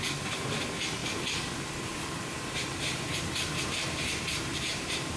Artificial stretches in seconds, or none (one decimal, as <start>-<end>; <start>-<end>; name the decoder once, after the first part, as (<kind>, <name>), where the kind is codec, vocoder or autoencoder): 0.0-5.2 (vocoder, BigVGAN v2)